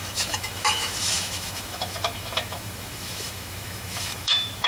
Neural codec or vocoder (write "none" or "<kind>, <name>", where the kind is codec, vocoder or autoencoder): autoencoder, DAC-VAE